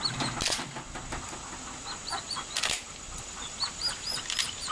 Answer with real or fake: real